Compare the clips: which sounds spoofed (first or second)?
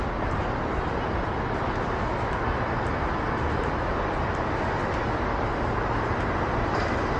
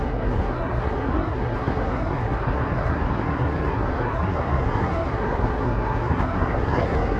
second